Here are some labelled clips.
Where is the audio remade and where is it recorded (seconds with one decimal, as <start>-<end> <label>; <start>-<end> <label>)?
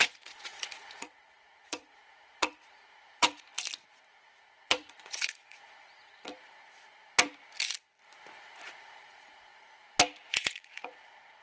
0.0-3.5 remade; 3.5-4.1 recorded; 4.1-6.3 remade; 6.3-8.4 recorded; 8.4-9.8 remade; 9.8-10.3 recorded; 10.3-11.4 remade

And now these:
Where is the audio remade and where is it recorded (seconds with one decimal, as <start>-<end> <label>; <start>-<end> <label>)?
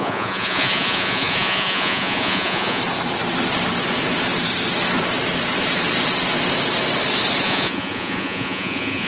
0.0-2.8 remade; 2.8-7.4 recorded; 7.4-9.1 remade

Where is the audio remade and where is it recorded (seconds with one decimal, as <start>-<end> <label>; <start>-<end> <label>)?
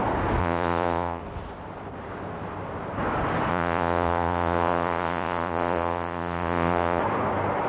0.0-0.4 recorded; 0.4-1.2 remade; 1.2-3.5 recorded; 3.5-7.0 remade; 7.0-7.7 recorded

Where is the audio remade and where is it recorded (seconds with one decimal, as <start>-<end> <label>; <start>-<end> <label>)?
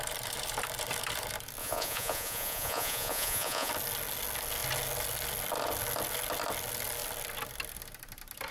0.0-1.6 recorded; 1.6-3.7 remade; 3.7-8.5 recorded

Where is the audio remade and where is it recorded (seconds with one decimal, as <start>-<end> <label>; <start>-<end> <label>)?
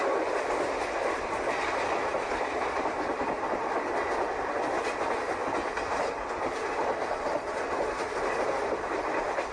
0.0-9.5 recorded